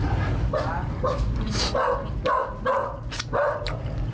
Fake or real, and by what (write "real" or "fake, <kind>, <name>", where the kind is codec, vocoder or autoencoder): real